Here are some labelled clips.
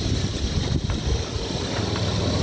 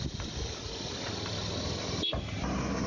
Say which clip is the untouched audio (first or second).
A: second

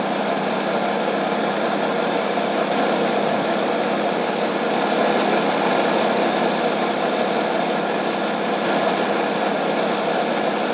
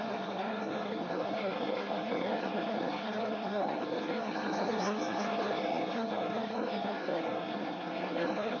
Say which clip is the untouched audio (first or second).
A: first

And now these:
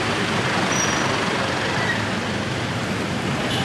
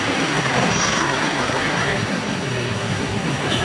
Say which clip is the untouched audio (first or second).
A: first